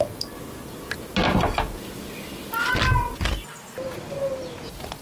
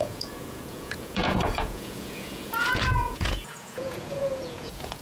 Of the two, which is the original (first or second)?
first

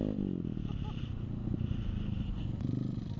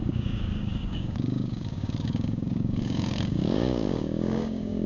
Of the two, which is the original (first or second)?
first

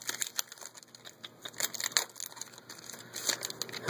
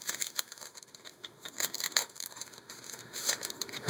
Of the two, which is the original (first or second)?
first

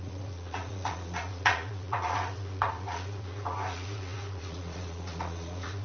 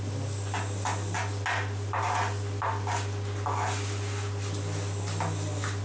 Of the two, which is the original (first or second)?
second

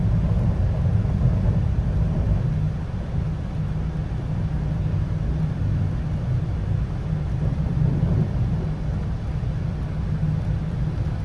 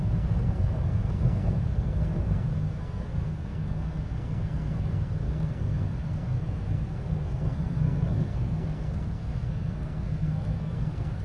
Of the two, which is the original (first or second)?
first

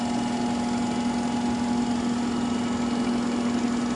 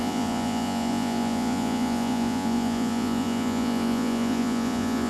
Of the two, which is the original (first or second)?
first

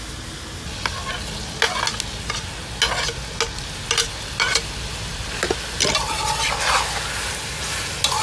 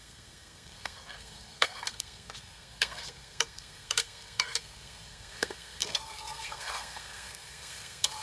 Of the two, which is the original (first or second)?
first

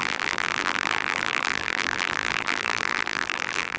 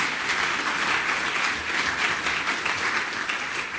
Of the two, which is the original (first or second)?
second